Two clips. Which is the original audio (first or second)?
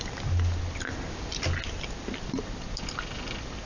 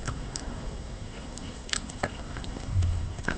first